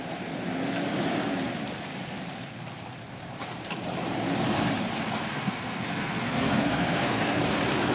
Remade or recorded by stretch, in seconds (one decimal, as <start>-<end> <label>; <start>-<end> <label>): 0.0-5.3 recorded; 5.3-7.4 remade; 7.4-7.9 recorded